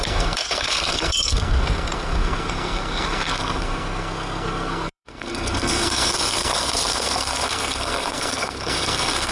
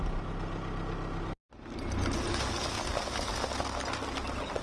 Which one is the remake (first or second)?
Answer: first